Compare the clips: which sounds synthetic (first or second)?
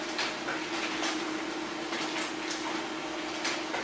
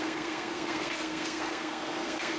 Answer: second